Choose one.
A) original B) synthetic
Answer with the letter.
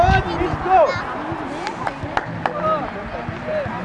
A